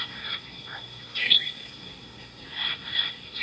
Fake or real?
fake